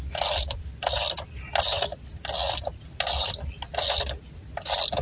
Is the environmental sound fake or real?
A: real